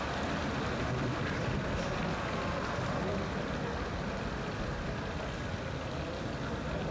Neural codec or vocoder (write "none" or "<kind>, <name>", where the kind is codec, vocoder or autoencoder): none